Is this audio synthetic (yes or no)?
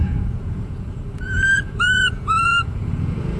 yes